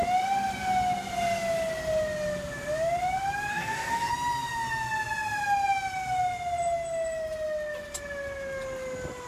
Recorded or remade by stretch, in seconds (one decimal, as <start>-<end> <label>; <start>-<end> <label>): 0.0-3.5 recorded; 3.5-4.1 remade; 4.1-9.3 recorded